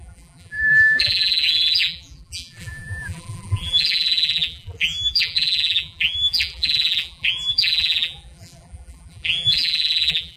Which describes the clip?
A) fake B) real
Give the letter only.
A